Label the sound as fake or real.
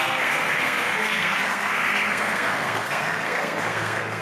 fake